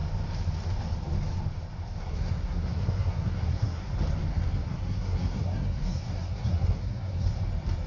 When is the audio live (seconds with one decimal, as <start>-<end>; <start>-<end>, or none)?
0.0-2.0; 3.9-4.3; 7.3-7.9